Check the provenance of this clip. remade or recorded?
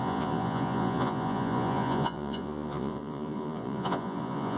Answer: remade